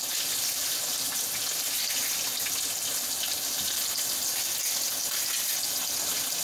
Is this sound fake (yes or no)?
no